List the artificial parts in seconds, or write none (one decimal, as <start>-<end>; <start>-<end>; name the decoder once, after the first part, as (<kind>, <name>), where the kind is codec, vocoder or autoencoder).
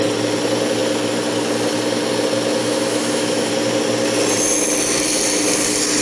2.6-3.5 (autoencoder, DAC-VAE)